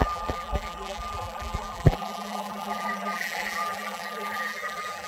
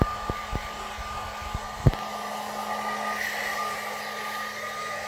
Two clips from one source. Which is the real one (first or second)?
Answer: second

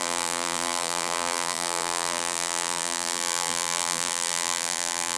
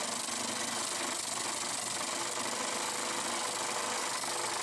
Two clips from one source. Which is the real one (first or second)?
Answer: second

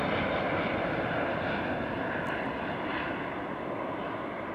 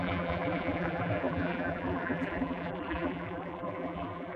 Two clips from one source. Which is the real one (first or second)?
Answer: first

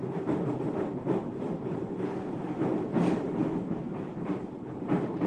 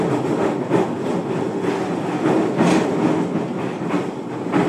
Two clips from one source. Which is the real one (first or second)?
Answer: second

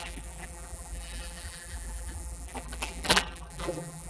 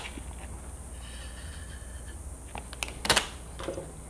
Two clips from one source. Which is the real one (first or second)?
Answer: second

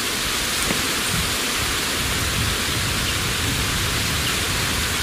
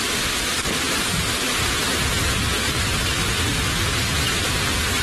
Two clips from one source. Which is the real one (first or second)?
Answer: first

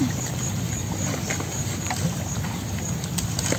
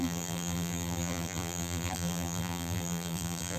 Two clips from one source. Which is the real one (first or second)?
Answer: first